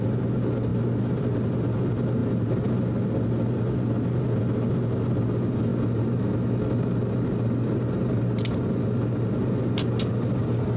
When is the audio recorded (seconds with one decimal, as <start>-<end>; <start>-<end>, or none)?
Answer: 0.0-10.8